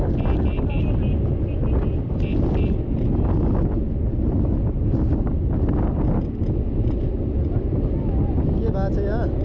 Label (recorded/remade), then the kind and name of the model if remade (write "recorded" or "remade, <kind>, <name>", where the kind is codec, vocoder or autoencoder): recorded